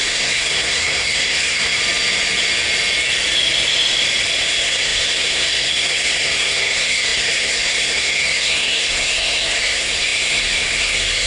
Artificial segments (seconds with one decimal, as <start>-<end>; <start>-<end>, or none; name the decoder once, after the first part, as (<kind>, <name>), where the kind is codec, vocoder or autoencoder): 0.0-1.8 (codec, SNAC); 4.4-11.3